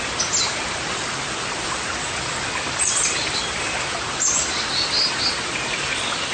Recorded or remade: recorded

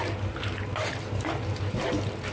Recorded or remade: recorded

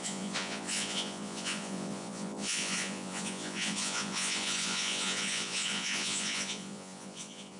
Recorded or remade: remade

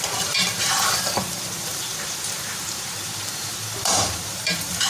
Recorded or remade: remade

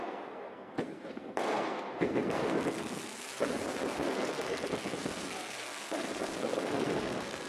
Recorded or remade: remade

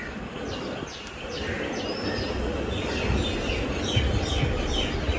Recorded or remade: recorded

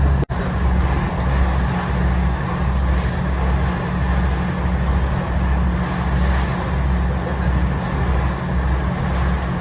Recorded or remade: recorded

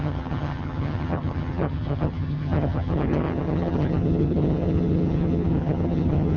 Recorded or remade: remade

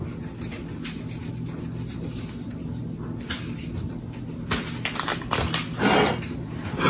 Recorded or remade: recorded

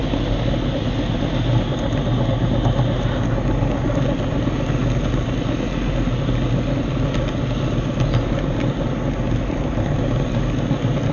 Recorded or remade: recorded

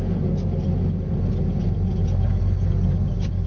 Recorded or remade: recorded